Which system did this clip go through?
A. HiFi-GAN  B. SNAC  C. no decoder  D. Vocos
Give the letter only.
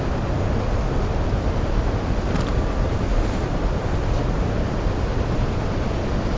C